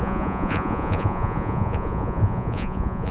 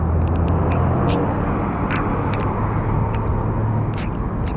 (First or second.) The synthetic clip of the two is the first